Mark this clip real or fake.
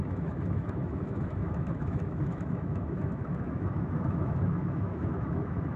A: fake